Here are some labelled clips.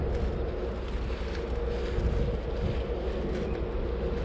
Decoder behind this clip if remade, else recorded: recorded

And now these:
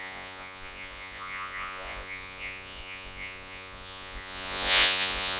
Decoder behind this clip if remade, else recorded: remade, vocoder, Vocos